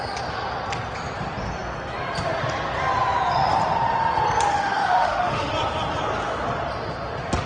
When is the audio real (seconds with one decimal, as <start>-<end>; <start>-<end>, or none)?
0.0-4.5; 5.5-7.5